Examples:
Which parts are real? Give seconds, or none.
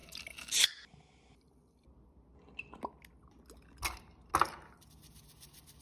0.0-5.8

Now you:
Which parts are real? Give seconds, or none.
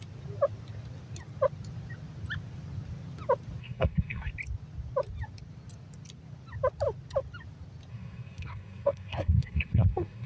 0.0-3.6; 4.3-7.9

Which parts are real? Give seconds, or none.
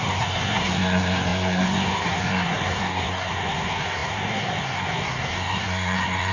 none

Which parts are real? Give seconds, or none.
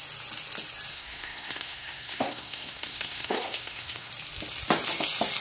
0.0-0.9; 4.1-5.4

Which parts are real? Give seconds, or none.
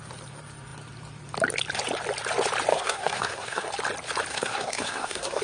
0.0-2.7; 3.7-4.3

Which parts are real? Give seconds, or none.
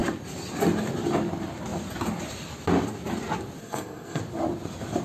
0.0-3.6; 4.2-5.0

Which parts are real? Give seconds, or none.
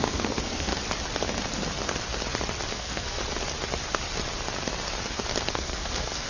0.7-2.7; 3.2-5.5